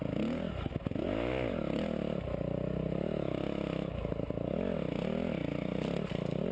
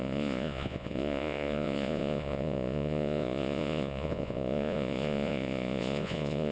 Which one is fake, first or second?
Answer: second